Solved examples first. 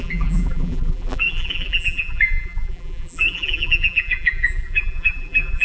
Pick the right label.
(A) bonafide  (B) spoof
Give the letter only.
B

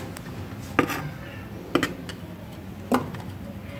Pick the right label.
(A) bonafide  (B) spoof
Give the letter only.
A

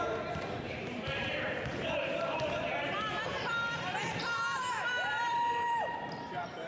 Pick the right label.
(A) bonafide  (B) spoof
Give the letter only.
B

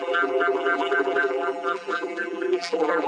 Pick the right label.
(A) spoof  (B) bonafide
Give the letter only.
A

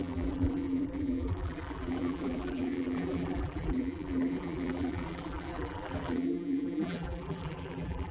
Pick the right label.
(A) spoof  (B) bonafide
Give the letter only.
A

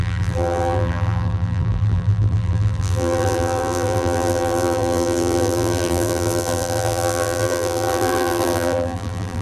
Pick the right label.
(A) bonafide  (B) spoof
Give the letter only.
B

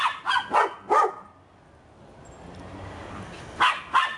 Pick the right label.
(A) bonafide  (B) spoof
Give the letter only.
A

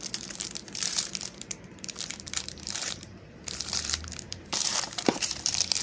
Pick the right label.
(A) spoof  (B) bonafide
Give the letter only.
A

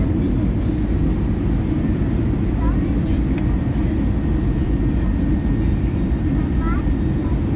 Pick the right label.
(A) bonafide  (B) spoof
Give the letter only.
B